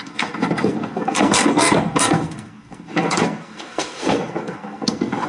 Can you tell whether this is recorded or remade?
remade